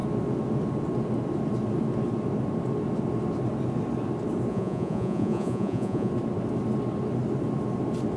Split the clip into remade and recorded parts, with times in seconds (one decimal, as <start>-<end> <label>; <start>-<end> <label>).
0.0-4.5 recorded; 4.5-6.1 remade; 6.1-8.2 recorded